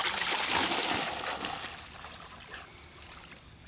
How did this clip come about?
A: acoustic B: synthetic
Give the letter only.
A